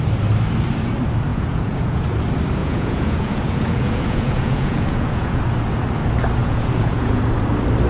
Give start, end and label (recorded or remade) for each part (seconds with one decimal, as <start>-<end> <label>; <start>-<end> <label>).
0.0-1.3 recorded; 1.3-2.0 remade; 2.0-2.6 recorded; 2.6-5.4 remade; 5.4-6.4 recorded; 6.4-7.2 remade; 7.2-7.9 recorded